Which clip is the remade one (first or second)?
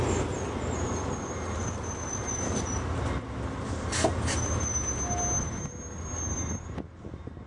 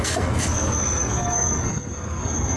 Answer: second